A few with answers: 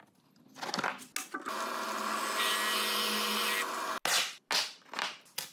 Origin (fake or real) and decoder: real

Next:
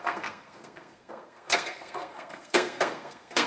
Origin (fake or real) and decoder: fake, codec, SNAC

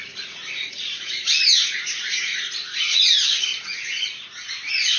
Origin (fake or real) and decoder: fake, vocoder, Vocos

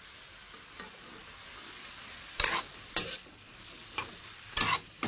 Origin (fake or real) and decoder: real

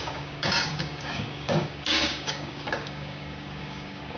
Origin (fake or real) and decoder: fake, codec, DAC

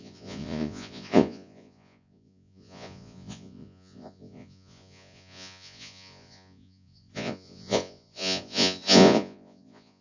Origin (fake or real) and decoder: fake, vocoder, Vocos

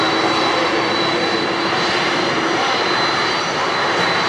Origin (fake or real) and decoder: fake, vocoder, BigVGAN v2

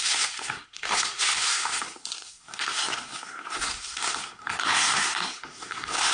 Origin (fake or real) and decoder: fake, codec, SNAC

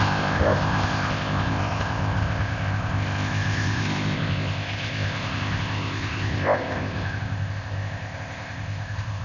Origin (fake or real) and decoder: fake, codec, ZipCodec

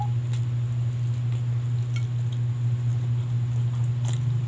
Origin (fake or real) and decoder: real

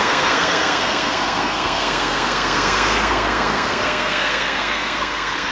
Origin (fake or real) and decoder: fake, codec, SNAC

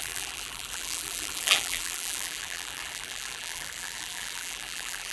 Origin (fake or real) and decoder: fake, vocoder, BigVGAN v2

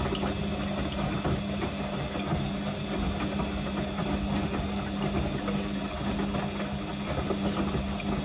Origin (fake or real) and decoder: real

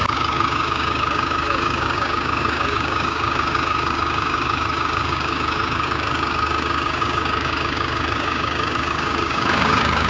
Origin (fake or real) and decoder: fake, codec, DAC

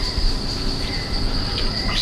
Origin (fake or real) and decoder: fake, vocoder, BigVGAN v2